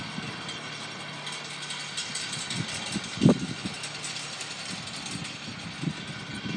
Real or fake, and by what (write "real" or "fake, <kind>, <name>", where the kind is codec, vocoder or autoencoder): real